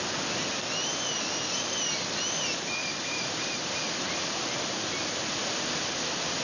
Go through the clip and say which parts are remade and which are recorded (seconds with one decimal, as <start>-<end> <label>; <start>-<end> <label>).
0.0-2.8 recorded; 2.8-3.8 remade; 3.8-6.4 recorded